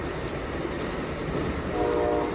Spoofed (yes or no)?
no